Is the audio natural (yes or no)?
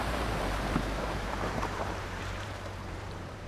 no